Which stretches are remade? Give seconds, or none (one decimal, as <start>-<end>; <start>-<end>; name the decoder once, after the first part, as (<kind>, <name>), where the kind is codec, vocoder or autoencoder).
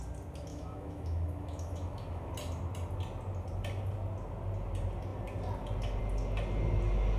0.5-2.3 (autoencoder, DAC-VAE)